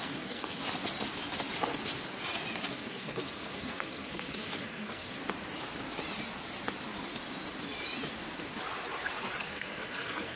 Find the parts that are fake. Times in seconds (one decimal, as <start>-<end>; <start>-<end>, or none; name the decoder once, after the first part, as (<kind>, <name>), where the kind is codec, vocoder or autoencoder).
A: 0.0-0.6 (codec, SNAC); 2.7-5.2; 9.4-10.4